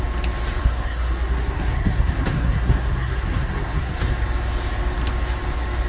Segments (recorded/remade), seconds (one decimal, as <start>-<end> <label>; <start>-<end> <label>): 0.0-0.6 recorded; 0.6-4.0 remade; 4.0-5.9 recorded